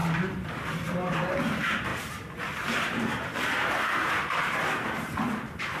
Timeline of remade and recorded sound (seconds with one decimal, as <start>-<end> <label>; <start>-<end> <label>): 0.0-1.1 recorded; 1.1-5.8 remade